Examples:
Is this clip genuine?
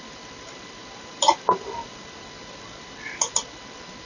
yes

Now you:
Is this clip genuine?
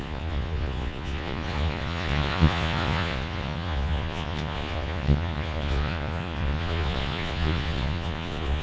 no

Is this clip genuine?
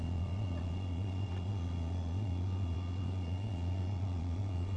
no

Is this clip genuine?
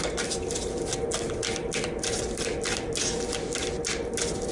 yes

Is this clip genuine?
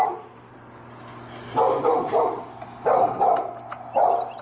yes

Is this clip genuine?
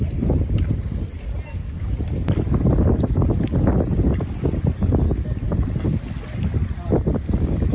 yes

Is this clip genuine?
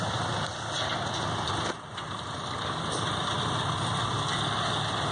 yes